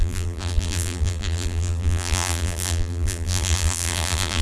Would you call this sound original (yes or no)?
no